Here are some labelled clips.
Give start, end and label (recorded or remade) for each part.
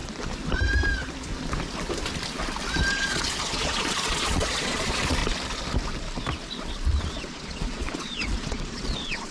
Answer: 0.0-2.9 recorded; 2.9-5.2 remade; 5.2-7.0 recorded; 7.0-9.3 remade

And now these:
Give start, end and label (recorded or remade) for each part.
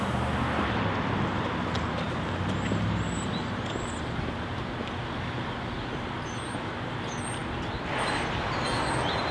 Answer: 0.0-9.3 recorded